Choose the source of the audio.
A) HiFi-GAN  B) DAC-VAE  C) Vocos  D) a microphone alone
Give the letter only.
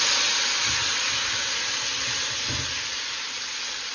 D